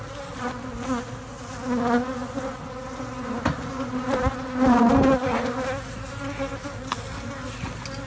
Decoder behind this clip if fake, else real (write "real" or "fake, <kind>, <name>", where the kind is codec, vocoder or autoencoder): real